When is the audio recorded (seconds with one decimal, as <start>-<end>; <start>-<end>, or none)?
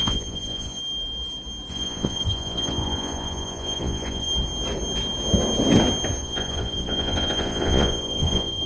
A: 0.8-1.7; 4.3-6.2